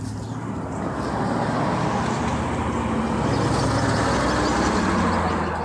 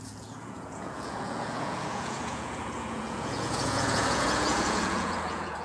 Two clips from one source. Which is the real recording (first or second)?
first